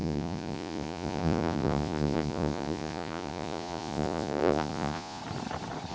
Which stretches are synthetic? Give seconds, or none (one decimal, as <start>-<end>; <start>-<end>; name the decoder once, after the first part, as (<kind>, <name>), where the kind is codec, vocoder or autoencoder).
0.0-5.2 (vocoder, Vocos)